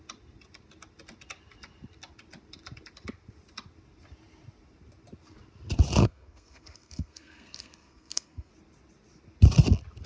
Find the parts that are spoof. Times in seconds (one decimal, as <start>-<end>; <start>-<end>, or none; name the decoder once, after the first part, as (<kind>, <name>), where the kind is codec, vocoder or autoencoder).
6.0-8.5 (codec, SNAC)